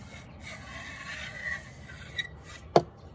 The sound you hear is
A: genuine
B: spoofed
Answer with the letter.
A